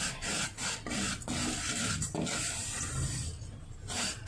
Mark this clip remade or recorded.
recorded